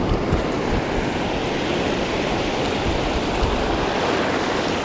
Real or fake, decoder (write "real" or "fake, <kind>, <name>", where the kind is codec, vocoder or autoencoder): real